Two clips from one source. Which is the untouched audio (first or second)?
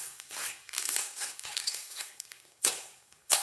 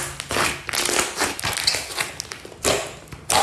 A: second